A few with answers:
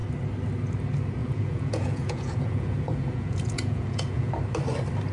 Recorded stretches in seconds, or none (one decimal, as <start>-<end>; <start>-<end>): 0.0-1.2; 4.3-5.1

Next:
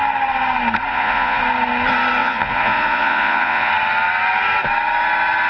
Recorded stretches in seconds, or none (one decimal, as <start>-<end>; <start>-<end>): 0.0-0.9; 1.4-2.2; 3.7-5.5

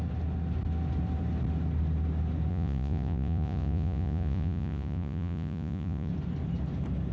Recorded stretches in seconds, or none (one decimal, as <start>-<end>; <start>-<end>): 0.0-2.5; 6.1-7.1

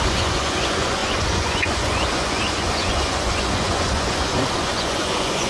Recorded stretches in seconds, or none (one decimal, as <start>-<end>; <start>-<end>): none

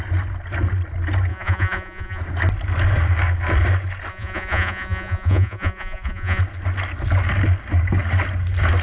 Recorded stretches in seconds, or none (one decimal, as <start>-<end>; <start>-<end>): 0.0-1.3; 2.2-4.1; 6.4-8.8

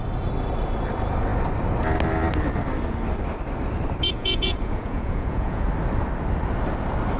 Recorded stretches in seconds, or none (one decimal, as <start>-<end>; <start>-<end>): 0.0-4.2; 5.7-7.2

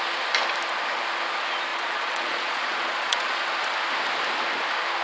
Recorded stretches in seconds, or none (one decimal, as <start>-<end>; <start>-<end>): 0.0-1.7; 3.4-5.0